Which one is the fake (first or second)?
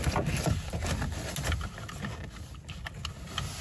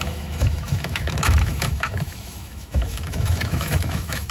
second